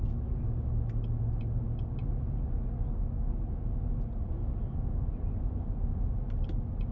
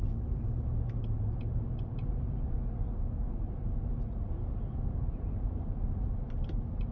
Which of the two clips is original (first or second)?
first